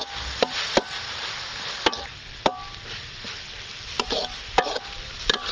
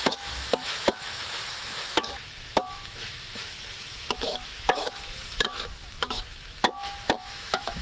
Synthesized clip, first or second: second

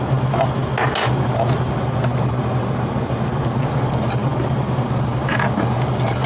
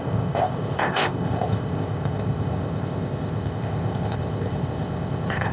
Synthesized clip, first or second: second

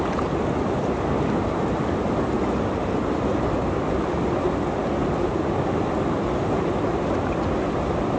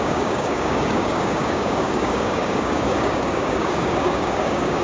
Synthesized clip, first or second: second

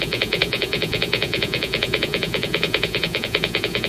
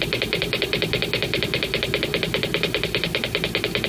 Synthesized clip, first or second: first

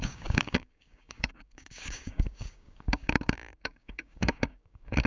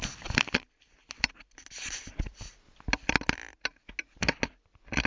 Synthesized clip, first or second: first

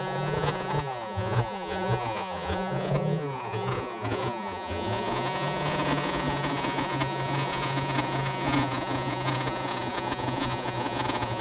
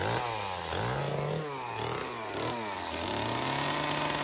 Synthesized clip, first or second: first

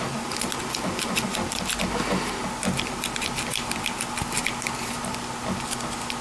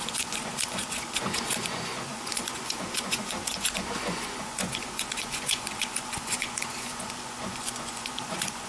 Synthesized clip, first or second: second